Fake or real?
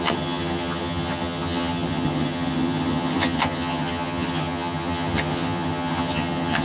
fake